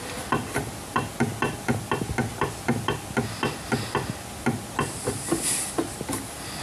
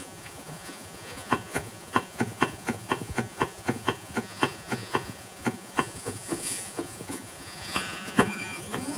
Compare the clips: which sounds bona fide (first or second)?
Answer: first